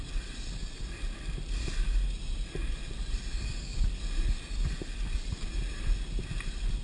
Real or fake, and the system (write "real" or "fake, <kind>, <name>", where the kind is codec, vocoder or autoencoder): real